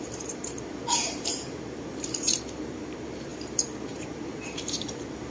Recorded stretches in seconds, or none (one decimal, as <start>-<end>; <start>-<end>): 3.3-4.1